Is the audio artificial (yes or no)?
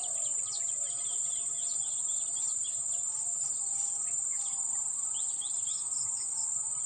no